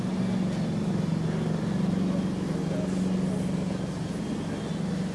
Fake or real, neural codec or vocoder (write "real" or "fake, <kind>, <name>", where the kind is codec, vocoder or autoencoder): real